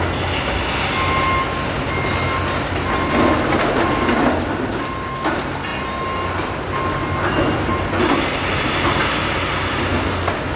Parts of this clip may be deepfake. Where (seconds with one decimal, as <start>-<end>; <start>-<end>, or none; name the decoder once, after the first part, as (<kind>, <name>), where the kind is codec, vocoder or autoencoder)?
none